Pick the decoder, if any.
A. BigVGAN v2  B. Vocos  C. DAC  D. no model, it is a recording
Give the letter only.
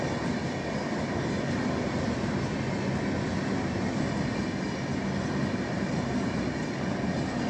D